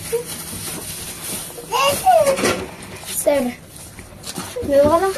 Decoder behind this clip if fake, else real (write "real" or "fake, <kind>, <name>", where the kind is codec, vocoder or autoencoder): real